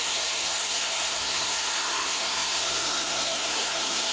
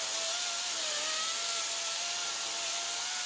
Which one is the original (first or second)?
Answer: second